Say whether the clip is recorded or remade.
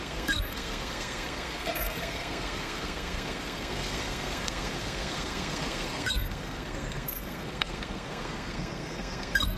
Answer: remade